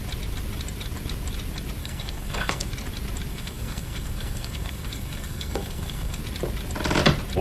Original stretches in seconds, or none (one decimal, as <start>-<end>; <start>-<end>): 0.0-1.8; 2.7-3.3; 6.2-7.4